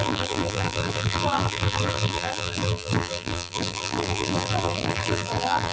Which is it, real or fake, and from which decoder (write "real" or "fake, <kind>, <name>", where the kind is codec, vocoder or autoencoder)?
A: fake, vocoder, BigVGAN v2